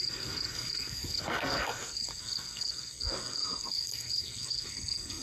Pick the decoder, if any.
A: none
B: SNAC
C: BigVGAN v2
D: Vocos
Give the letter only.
B